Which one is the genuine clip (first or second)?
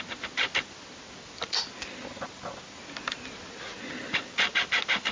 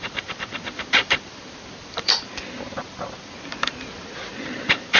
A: first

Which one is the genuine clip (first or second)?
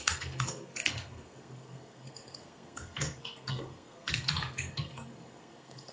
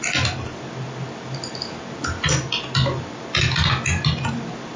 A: second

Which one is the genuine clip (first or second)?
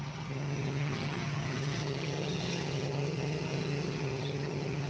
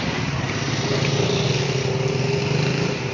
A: second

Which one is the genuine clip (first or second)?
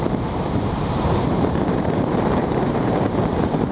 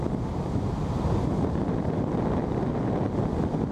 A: second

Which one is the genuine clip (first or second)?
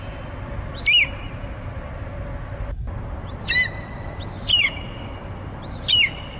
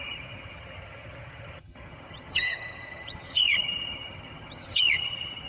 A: first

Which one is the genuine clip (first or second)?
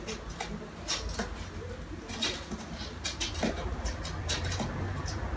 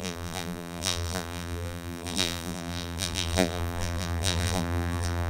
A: first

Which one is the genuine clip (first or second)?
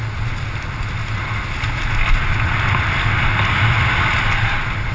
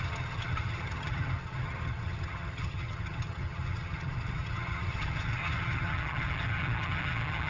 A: first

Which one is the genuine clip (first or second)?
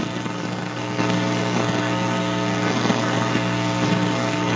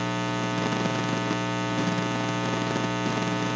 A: second